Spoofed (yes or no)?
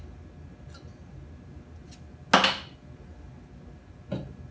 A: no